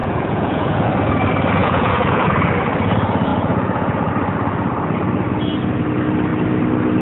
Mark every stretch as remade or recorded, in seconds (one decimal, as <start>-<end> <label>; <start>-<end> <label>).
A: 0.0-0.9 remade; 0.9-1.6 recorded; 1.6-2.3 remade; 2.3-3.3 recorded; 3.3-4.1 remade; 4.1-7.0 recorded